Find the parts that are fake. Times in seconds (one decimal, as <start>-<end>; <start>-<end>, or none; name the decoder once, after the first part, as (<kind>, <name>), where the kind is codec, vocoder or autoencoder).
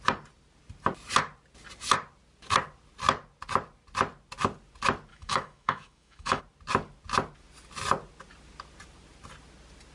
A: 5.1-6.4 (autoencoder, DAC-VAE)